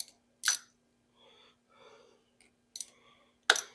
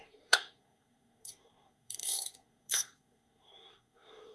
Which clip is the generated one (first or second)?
second